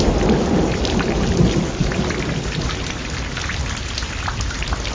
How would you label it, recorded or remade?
recorded